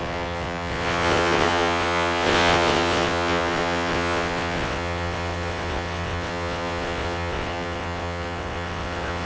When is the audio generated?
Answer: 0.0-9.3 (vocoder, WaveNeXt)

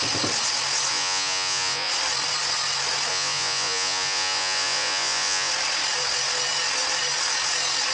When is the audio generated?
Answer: 0.9-1.9 (vocoder, Vocos); 3.1-5.5

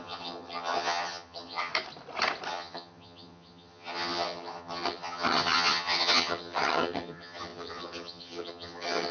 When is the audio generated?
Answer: 0.0-1.7 (vocoder, HiFi-GAN); 2.5-9.1

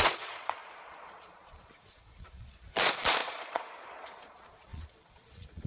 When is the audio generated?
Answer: 0.0-5.7 (vocoder, Vocos)

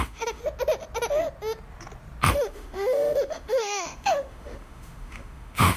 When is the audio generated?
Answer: 0.0-0.4 (autoencoder, DAC-VAE); 2.3-5.8